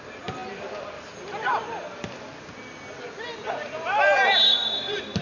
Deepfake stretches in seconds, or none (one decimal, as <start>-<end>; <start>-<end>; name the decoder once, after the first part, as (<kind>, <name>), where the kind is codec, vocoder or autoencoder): none